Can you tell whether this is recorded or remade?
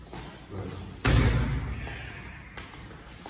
recorded